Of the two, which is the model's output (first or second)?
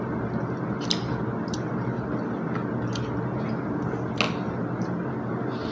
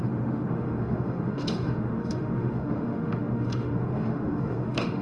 second